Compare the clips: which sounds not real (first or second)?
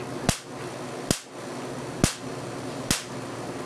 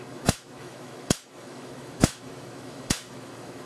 second